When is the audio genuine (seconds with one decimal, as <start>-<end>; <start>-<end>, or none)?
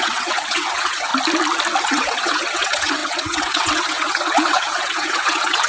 1.1-1.8